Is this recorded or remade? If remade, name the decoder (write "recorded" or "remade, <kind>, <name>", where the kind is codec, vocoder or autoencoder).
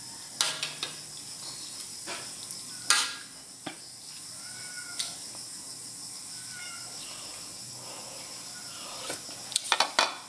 recorded